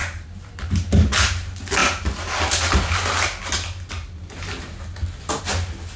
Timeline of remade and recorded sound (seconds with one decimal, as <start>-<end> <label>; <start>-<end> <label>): 0.0-6.0 recorded

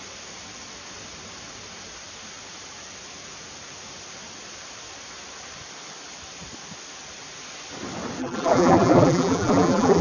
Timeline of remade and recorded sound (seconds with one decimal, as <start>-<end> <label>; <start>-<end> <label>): 0.0-8.2 recorded; 8.2-10.0 remade

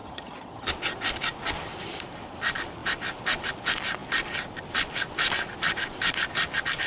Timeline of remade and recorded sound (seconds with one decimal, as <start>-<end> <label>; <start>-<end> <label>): 0.0-0.7 remade; 0.7-6.9 recorded

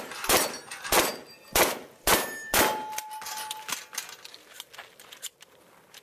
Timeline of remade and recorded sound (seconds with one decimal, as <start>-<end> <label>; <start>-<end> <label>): 0.0-6.0 recorded

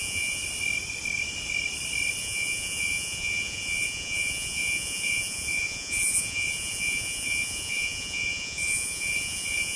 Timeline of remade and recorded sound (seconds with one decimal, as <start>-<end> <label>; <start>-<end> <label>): 0.0-0.4 remade; 0.4-2.2 recorded; 2.2-9.8 remade

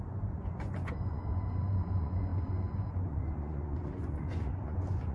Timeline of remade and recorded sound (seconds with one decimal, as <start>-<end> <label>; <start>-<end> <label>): 0.0-5.1 remade

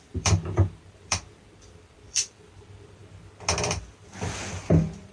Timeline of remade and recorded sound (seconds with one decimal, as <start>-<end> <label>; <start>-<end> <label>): 0.0-3.0 remade; 3.0-3.6 recorded; 3.6-5.1 remade

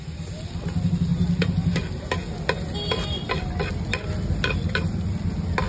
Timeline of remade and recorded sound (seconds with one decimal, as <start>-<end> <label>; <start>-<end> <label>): 0.0-5.7 recorded